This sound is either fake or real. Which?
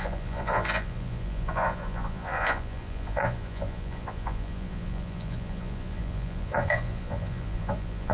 fake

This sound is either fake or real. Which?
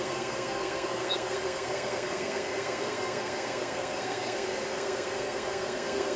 fake